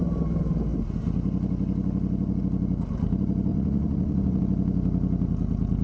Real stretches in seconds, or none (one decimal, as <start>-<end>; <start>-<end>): 0.0-3.5; 4.4-5.8